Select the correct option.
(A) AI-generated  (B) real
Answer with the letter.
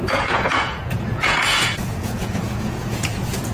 A